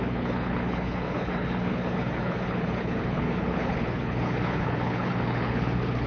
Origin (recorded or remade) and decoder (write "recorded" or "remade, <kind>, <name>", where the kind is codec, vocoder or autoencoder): remade, codec, HILCodec